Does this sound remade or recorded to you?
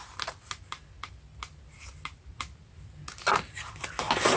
recorded